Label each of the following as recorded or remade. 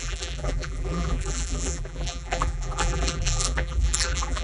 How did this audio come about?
remade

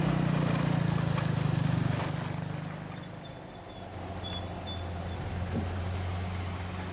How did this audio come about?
recorded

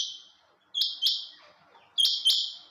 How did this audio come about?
recorded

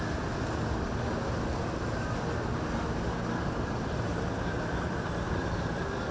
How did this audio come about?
recorded